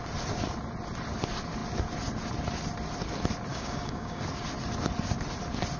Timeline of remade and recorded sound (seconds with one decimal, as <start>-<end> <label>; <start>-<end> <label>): 0.0-3.5 recorded; 3.5-4.2 remade; 4.2-5.8 recorded